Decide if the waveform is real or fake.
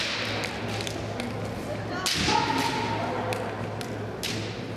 real